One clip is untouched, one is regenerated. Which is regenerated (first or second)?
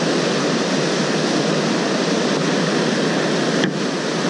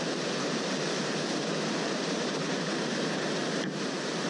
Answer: second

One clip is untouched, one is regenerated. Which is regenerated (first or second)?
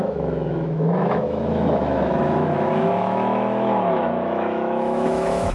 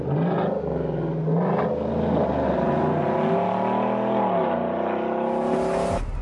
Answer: first